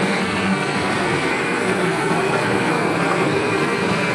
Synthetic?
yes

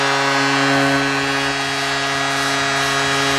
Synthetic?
no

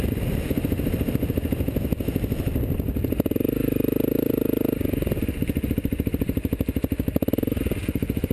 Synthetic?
no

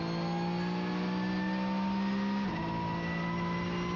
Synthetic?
no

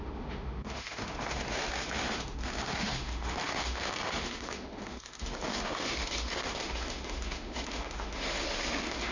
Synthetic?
yes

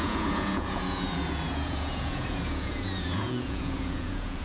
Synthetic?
yes